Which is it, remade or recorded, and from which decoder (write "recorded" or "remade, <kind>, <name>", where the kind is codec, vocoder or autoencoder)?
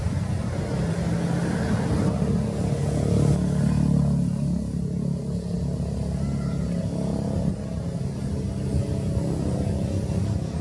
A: recorded